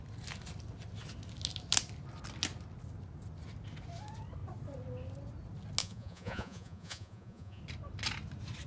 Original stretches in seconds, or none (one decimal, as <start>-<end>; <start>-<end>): 0.0-5.8; 7.6-8.7